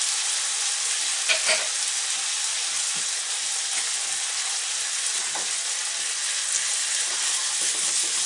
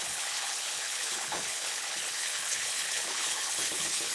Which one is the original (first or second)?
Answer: first